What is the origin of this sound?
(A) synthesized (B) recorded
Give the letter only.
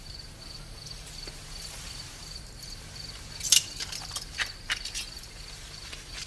A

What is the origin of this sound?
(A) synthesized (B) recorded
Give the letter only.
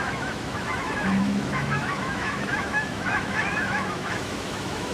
A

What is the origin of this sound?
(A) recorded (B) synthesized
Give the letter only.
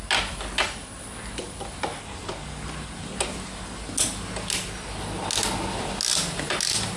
A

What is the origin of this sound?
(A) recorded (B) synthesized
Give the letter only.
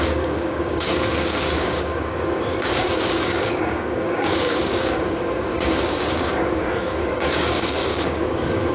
B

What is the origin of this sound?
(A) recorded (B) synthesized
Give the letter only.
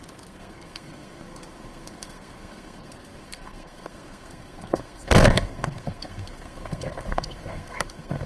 B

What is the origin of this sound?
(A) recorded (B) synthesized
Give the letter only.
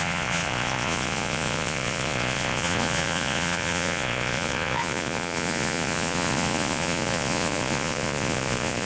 B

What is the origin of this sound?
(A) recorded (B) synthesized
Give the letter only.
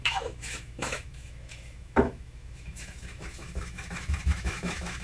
B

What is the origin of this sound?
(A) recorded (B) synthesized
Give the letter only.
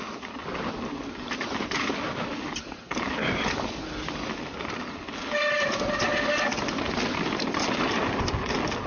A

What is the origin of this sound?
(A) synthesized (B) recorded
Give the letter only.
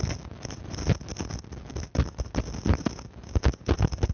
B